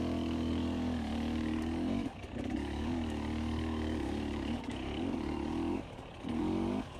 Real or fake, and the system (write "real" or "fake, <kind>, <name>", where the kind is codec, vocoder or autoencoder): fake, codec, DAC